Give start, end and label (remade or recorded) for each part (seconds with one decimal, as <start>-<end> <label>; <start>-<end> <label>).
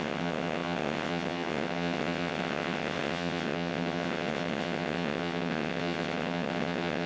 0.0-7.1 remade